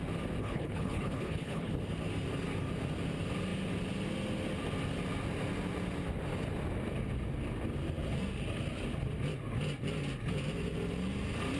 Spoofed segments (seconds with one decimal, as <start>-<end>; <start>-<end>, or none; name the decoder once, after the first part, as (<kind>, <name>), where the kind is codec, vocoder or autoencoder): 0.4-1.7 (codec, HILCodec)